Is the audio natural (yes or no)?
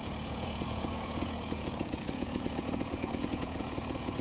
no